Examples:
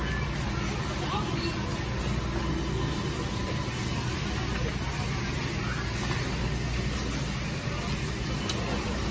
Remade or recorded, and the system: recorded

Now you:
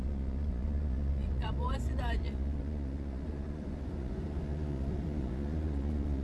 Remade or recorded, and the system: remade, vocoder, Vocos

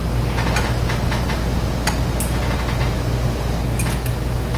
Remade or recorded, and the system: recorded